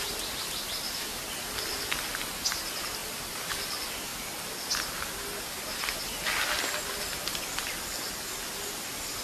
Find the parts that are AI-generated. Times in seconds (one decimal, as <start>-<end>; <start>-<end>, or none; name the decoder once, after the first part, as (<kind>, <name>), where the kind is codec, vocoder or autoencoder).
0.0-1.7 (vocoder, BigVGAN v2); 2.3-3.0; 3.6-4.1; 7.1-9.2